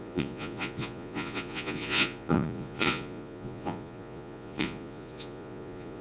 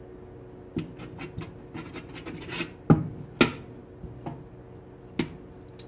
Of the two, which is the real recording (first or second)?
second